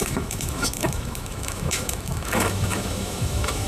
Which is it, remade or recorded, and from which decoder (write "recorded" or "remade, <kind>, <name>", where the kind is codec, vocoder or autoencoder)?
remade, autoencoder, DAC-VAE